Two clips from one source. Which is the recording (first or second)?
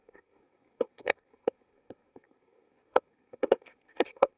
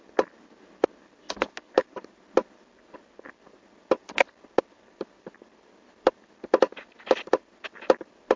second